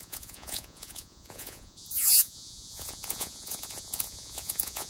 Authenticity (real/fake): fake